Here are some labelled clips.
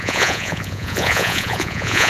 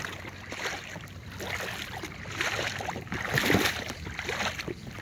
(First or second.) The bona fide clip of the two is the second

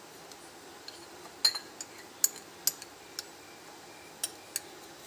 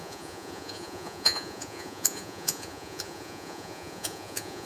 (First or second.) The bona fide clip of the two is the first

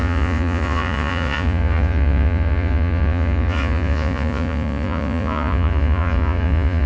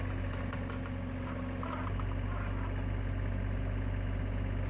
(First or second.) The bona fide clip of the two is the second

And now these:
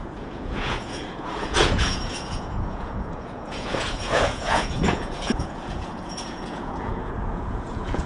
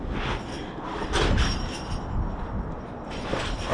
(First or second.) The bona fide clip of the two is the second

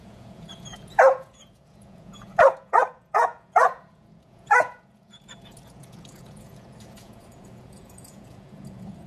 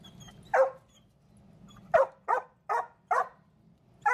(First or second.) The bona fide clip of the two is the second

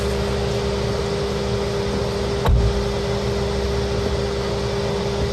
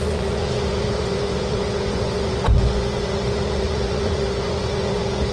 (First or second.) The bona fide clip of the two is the first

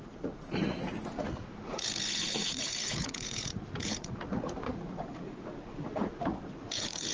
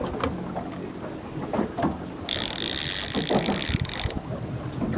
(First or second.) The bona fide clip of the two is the second